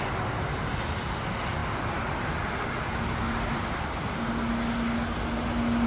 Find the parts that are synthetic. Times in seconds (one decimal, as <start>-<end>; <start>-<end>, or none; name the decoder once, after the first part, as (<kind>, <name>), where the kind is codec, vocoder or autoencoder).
none